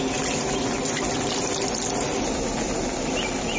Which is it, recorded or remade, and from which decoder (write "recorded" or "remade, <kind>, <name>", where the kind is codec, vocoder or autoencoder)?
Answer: recorded